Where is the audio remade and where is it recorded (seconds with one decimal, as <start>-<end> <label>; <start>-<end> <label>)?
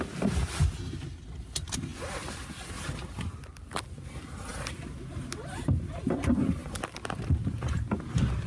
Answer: 0.0-8.5 recorded